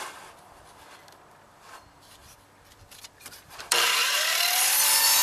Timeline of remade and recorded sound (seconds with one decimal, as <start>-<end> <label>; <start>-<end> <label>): 0.0-2.2 recorded; 2.2-5.2 remade